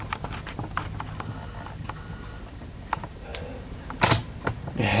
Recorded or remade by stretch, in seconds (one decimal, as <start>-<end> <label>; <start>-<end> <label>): 0.0-5.0 recorded